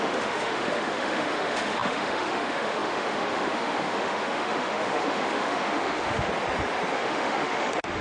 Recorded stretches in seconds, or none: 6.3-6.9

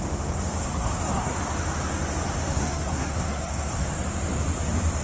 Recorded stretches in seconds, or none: 0.0-0.6; 1.4-2.4; 3.8-5.0

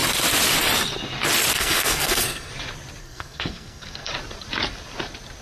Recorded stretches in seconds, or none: 0.0-1.5; 2.5-3.0; 4.1-5.4

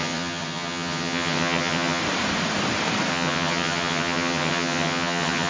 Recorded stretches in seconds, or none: 2.0-3.1

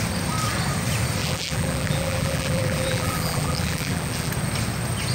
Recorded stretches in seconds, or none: 0.0-1.2; 4.3-5.1

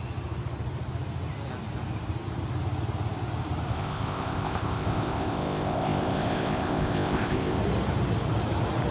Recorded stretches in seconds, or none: 0.0-3.7; 7.6-8.9